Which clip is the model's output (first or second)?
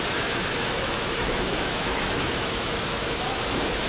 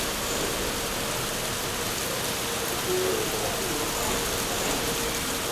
first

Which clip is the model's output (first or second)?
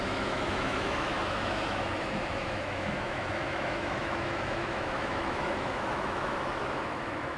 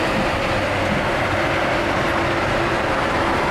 first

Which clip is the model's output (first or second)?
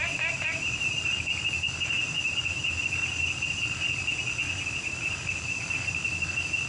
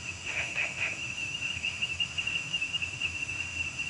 second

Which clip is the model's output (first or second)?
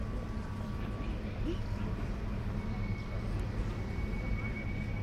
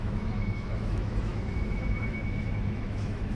second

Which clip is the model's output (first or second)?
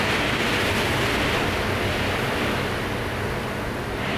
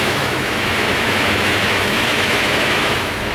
second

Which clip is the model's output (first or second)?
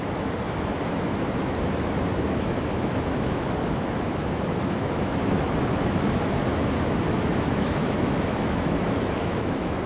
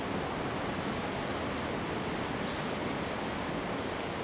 first